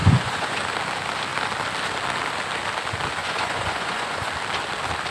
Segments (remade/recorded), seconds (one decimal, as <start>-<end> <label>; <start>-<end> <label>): 0.0-0.6 remade; 0.6-3.2 recorded; 3.2-4.3 remade; 4.3-5.1 recorded